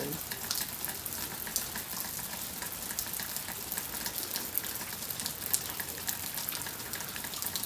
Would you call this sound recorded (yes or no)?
yes